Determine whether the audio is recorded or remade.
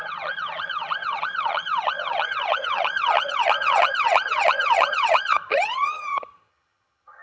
remade